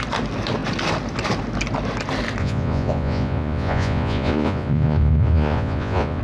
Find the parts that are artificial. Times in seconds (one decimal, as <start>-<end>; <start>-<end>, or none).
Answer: 2.4-6.2